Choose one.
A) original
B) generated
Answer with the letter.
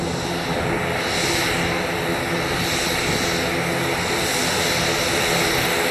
A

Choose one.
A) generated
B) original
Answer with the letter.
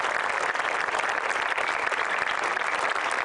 B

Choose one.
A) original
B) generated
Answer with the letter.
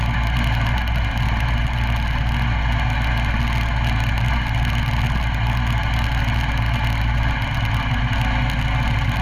A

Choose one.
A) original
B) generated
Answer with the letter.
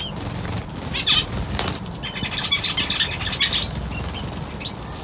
A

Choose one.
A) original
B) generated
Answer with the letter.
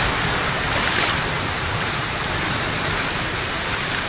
A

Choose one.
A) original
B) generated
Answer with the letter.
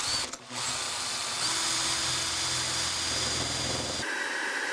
A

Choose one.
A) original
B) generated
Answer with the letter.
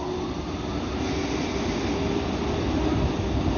A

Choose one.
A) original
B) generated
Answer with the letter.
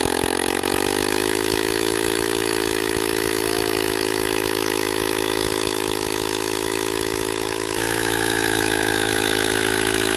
B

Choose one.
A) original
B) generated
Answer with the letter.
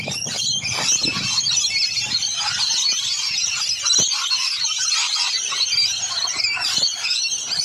A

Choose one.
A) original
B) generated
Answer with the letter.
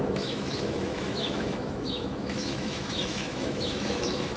B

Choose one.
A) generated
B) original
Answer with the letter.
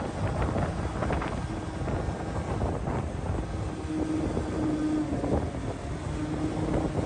B